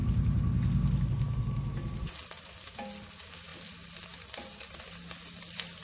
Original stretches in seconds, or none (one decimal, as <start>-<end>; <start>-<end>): 0.0-5.8